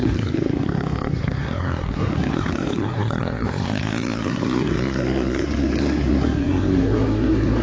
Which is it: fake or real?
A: fake